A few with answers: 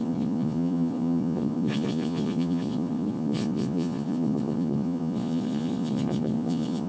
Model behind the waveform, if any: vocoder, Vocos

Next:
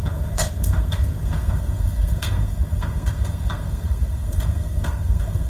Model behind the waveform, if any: codec, SNAC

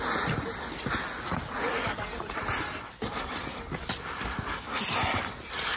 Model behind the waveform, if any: none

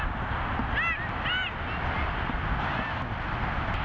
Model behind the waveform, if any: none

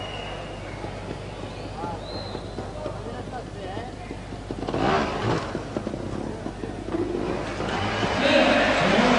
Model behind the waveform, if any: none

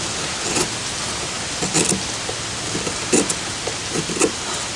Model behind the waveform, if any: none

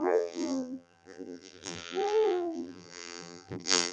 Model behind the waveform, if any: vocoder, BigVGAN v2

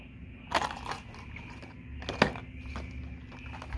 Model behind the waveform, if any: none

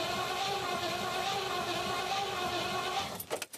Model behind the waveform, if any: none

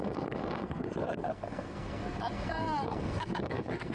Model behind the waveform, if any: codec, SNAC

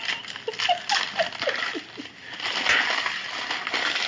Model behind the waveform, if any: none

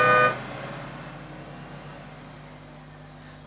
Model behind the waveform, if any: none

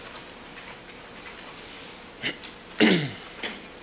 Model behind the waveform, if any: none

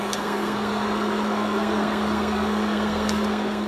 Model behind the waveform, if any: codec, SNAC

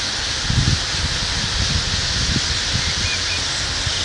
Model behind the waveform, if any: none